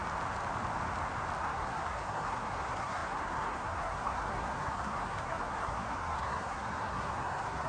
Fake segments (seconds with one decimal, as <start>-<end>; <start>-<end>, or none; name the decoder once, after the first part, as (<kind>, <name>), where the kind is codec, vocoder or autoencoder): 1.4-7.7 (codec, SNAC)